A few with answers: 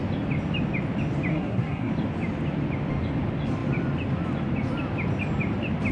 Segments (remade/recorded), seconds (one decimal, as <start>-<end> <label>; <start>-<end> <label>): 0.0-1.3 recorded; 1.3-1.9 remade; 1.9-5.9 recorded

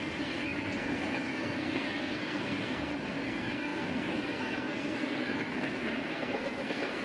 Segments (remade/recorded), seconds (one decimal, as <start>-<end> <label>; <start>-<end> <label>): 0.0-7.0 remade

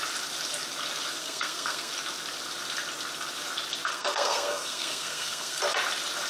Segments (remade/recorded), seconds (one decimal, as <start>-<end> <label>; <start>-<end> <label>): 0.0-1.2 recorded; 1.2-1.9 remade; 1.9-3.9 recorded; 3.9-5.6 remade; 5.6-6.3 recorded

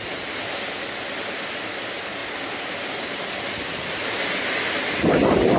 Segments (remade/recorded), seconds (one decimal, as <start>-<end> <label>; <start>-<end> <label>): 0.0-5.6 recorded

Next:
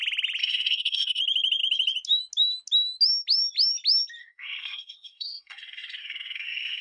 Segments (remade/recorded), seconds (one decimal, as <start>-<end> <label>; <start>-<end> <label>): 0.0-0.4 recorded; 0.4-1.2 remade; 1.2-4.2 recorded; 4.2-6.8 remade

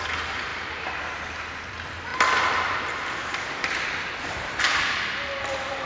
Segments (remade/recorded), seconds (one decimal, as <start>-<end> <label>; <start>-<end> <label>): 0.0-5.9 recorded

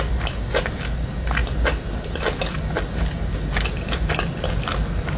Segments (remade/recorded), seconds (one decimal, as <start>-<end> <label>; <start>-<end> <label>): 0.0-5.2 recorded

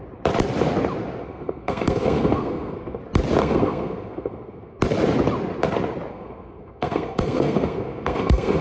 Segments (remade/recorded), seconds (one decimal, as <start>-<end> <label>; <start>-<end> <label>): 0.0-1.2 recorded; 1.2-3.0 remade; 3.0-3.4 recorded; 3.4-4.8 remade; 4.8-6.1 recorded; 6.1-8.6 remade